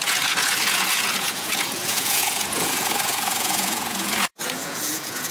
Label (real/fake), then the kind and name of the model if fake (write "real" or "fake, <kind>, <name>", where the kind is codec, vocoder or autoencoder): fake, vocoder, Vocos